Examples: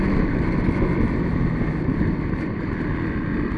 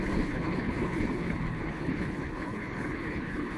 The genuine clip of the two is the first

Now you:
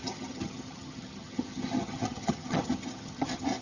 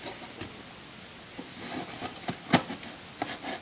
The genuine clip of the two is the second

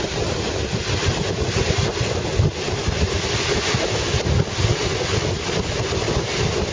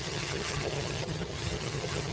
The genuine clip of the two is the first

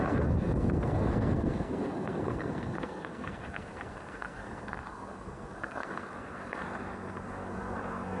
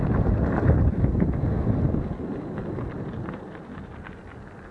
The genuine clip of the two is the second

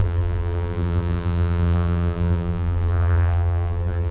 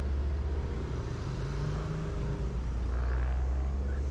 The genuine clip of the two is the second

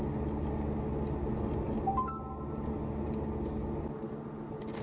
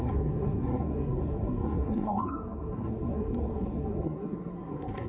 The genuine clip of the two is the first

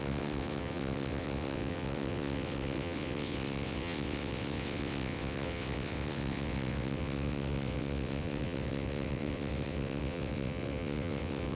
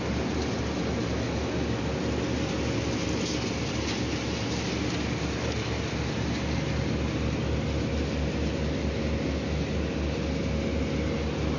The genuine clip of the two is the second